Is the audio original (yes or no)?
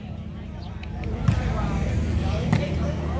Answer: yes